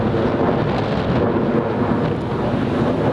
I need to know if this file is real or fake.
real